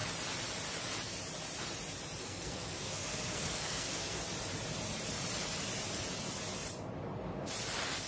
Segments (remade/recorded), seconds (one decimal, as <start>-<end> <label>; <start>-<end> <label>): 0.0-2.2 recorded; 2.2-4.2 remade; 4.2-8.1 recorded

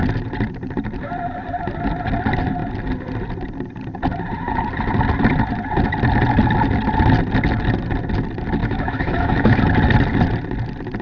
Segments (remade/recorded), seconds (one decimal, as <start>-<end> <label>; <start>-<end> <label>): 0.0-8.6 recorded; 8.6-9.6 remade; 9.6-11.0 recorded

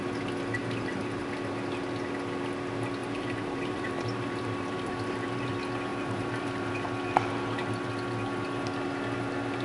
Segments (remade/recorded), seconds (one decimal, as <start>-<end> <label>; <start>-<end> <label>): 0.0-0.6 recorded; 0.6-1.2 remade; 1.2-3.0 recorded; 3.0-5.5 remade; 5.5-5.9 recorded; 5.9-6.7 remade; 6.7-9.6 recorded